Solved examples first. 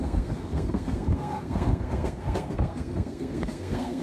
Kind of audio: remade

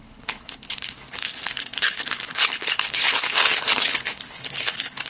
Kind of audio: remade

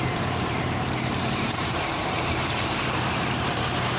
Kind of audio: remade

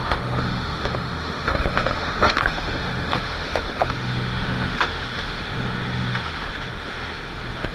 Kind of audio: remade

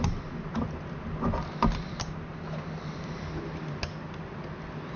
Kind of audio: recorded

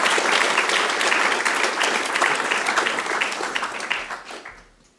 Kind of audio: recorded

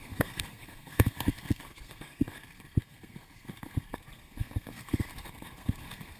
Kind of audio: remade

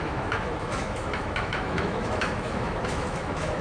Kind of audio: remade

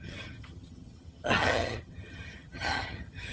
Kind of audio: remade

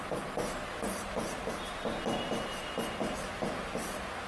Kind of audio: recorded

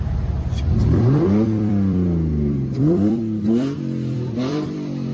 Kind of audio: remade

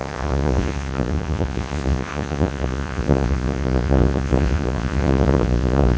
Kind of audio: remade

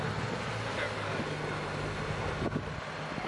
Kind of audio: recorded